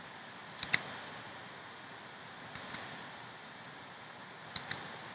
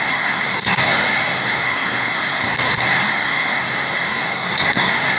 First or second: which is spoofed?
second